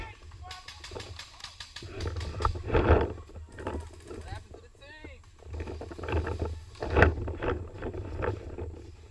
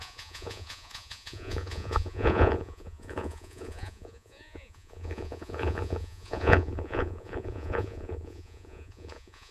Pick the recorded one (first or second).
first